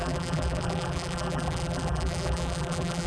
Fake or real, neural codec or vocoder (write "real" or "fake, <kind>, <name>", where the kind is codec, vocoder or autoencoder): fake, vocoder, BigVGAN v2